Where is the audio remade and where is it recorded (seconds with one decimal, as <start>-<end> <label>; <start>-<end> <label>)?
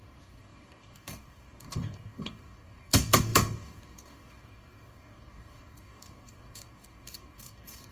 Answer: 0.0-7.9 remade